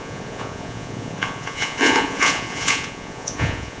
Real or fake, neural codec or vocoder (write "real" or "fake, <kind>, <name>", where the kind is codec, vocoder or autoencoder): fake, vocoder, Vocos